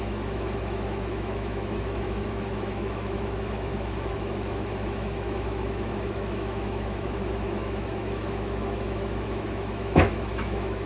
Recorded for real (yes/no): no